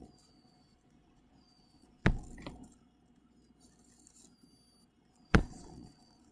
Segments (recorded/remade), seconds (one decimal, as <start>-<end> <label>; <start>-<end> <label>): 0.0-2.0 remade; 2.0-5.1 recorded; 5.1-6.3 remade